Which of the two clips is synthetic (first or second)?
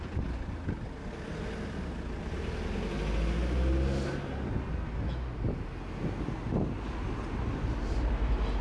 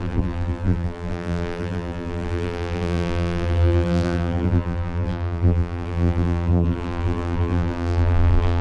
second